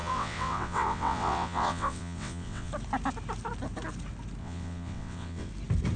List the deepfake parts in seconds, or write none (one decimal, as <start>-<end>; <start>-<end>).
0.0-2.7; 4.4-5.5